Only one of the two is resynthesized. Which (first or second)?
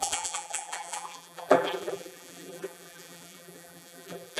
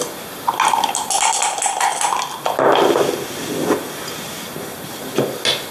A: first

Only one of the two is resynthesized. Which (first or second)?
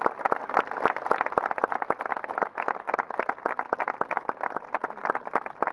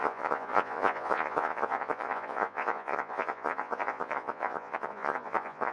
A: second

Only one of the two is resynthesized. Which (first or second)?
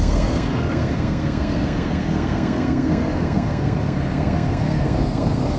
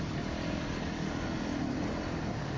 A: first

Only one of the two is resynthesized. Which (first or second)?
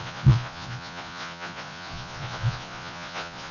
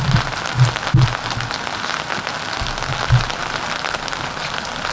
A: first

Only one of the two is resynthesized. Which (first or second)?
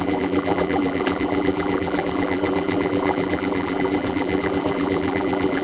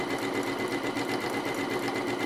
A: first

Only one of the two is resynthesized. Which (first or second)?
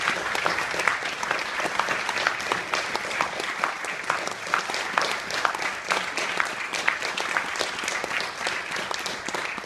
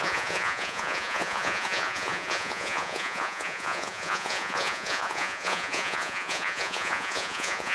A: second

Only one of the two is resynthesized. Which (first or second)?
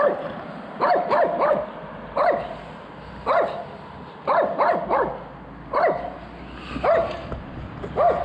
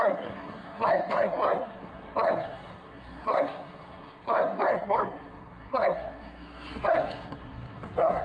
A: second